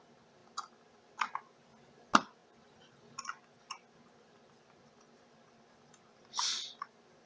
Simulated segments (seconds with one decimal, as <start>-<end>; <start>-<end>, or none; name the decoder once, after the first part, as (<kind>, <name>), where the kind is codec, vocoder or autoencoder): none